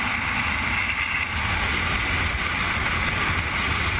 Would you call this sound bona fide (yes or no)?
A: yes